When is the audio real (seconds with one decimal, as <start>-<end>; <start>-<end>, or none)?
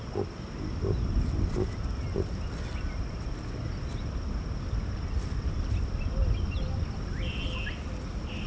0.0-8.5